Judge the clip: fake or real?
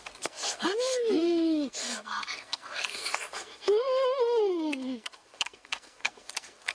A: fake